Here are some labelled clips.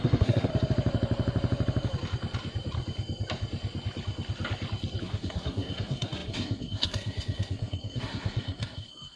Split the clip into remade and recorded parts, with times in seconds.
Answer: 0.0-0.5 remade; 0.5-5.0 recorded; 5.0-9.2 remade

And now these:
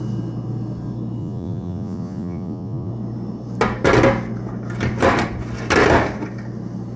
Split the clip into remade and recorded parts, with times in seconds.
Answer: 0.0-1.2 recorded; 1.2-2.9 remade; 2.9-7.0 recorded

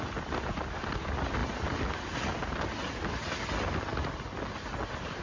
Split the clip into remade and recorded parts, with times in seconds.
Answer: 0.0-5.2 recorded